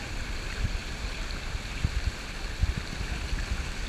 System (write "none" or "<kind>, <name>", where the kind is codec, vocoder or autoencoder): none